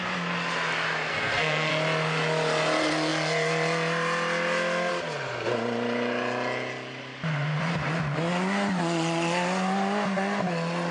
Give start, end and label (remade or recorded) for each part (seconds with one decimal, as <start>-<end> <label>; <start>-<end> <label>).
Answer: 0.0-1.1 recorded; 1.1-1.7 remade; 1.7-10.9 recorded